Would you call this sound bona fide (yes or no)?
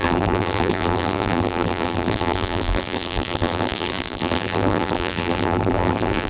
no